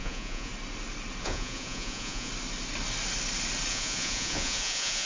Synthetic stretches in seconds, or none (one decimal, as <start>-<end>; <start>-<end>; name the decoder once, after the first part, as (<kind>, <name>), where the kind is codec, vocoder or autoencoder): 0.0-0.5 (vocoder, Vocos); 1.2-2.3; 3.7-5.1